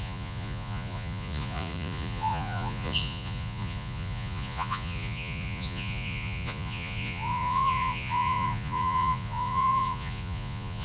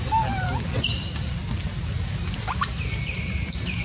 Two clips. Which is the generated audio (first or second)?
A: first